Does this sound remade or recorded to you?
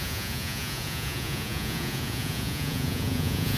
remade